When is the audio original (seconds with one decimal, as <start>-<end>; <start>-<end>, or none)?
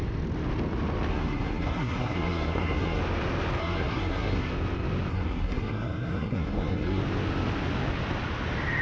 0.0-1.1; 3.0-3.6; 4.5-5.1; 7.0-8.8